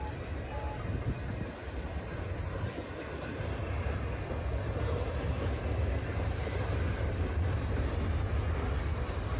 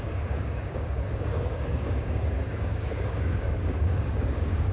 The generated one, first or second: second